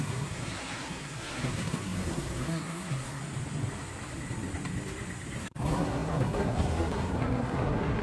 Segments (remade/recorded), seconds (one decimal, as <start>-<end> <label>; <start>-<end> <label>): 0.0-3.2 remade; 3.2-5.4 recorded; 5.4-8.0 remade